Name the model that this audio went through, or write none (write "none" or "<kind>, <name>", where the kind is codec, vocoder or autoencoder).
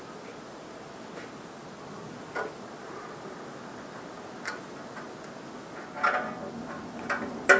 none